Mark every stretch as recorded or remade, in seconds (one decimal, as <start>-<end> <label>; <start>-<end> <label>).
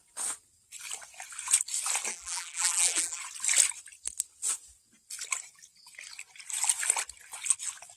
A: 0.0-2.1 recorded; 2.1-3.2 remade; 3.2-8.0 recorded